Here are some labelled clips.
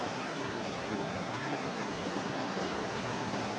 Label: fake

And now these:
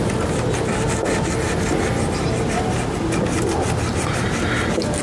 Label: real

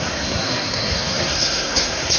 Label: fake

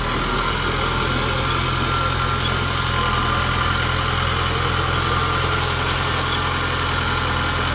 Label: real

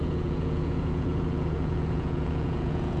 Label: fake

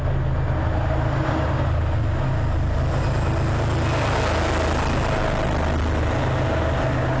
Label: real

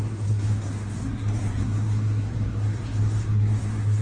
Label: fake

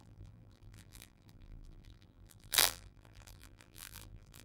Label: fake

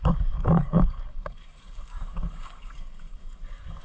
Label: fake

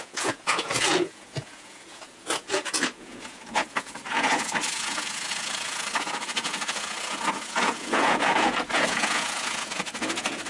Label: fake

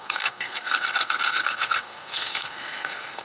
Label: fake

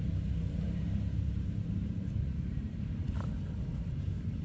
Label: fake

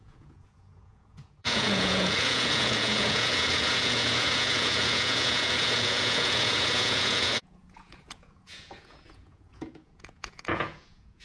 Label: fake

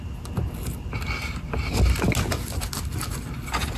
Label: real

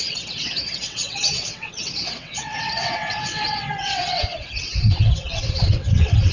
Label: fake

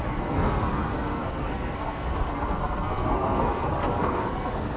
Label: fake